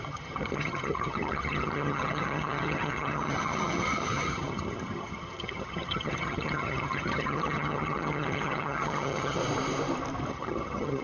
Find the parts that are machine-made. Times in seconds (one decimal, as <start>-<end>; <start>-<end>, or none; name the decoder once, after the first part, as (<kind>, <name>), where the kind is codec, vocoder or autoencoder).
0.0-9.4 (vocoder, HiFi-GAN); 10.3-11.0

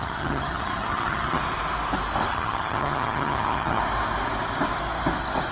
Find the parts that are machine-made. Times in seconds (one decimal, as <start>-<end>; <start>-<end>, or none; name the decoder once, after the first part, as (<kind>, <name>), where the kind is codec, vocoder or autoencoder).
0.0-1.4 (vocoder, HiFi-GAN); 2.3-3.8